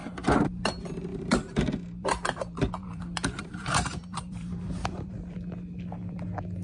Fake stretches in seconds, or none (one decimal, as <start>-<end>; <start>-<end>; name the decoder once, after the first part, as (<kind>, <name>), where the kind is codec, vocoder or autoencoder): 0.0-0.6 (vocoder, BigVGAN v2); 1.1-5.1